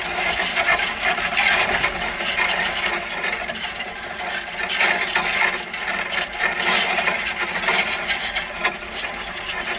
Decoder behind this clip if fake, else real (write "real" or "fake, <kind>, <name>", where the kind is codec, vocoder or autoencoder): real